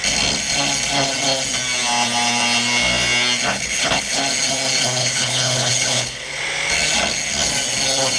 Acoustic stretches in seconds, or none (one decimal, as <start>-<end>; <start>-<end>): 0.0-3.5; 4.2-5.0; 6.4-8.2